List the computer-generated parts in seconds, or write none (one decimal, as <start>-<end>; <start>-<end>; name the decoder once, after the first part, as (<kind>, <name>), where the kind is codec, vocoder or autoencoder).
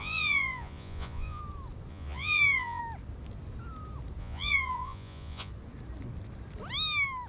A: 0.0-1.4 (vocoder, Vocos); 1.9-2.8; 4.2-5.5